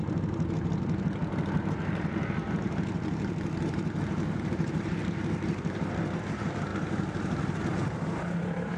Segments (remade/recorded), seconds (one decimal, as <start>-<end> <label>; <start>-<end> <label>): 0.0-6.7 remade; 6.7-7.7 recorded; 7.7-8.8 remade